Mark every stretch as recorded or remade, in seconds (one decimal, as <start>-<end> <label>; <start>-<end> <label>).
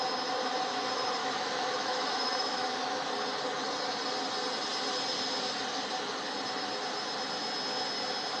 0.0-1.2 recorded; 1.2-3.1 remade; 3.1-8.4 recorded